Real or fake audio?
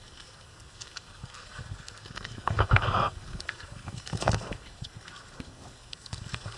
fake